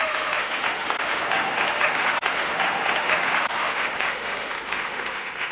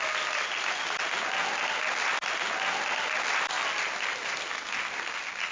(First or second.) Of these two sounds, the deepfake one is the first